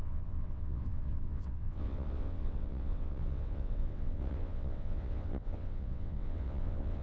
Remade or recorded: remade